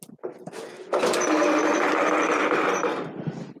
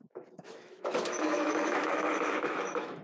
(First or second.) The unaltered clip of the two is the first